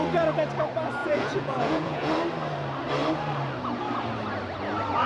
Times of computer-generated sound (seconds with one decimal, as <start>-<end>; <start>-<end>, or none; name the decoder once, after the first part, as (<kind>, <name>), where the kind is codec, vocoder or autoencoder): 1.0-2.1 (vocoder, Vocos)